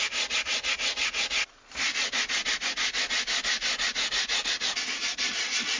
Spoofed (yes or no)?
no